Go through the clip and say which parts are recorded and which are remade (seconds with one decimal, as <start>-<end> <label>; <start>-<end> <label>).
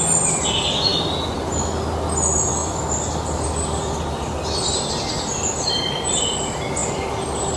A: 0.0-0.9 recorded; 0.9-1.4 remade; 1.4-2.6 recorded; 2.6-4.9 remade; 4.9-6.8 recorded; 6.8-7.6 remade